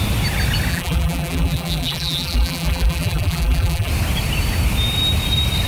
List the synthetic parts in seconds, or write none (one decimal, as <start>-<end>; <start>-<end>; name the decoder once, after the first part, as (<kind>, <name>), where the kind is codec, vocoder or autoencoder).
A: 0.7-3.9 (vocoder, BigVGAN v2)